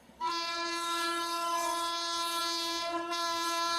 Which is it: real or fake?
fake